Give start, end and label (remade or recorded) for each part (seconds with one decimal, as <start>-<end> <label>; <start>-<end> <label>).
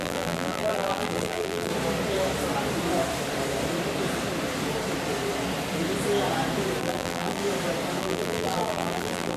0.0-1.7 remade; 1.7-6.8 recorded; 6.8-7.4 remade; 7.4-8.0 recorded; 8.0-9.4 remade